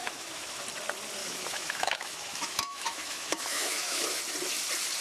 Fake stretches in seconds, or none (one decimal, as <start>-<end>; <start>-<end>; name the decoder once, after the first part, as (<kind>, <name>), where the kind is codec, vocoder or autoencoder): 0.0-0.6 (autoencoder, DAC-VAE); 1.2-4.2

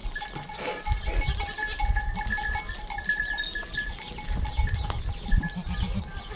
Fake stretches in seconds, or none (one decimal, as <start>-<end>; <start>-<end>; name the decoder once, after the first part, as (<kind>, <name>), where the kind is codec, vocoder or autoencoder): none

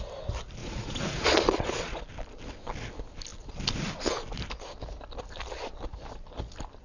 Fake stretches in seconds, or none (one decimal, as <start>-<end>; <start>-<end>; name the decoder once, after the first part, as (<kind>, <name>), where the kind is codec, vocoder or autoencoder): 0.6-2.0 (vocoder, Vocos)

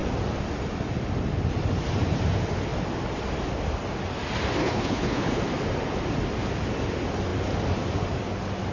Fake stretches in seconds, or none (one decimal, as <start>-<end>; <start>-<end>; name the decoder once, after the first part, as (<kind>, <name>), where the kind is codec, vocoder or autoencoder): 4.6-5.4 (codec, HILCodec)

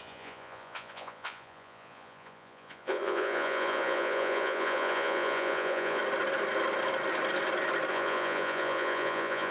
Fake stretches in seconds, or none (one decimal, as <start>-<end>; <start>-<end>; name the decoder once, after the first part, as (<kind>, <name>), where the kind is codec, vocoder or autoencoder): 0.0-6.0 (vocoder, Vocos); 7.9-9.5

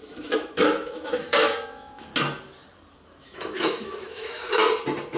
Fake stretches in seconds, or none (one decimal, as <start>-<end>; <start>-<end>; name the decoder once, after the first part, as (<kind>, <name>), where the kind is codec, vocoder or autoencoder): 0.0-2.1 (autoencoder, DAC-VAE); 3.2-4.6

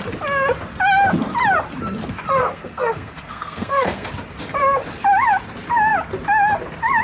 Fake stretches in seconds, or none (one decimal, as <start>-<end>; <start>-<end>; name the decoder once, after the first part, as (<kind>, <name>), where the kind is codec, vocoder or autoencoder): 2.4-4.1 (codec, SNAC)